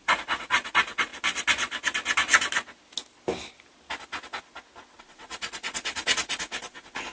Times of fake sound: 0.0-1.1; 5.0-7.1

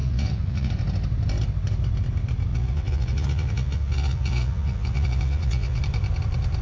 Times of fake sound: 0.0-0.7; 2.5-5.8